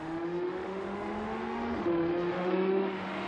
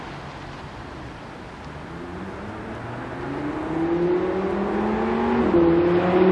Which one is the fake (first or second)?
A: first